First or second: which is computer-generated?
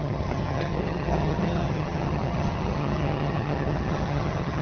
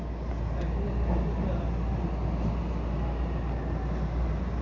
first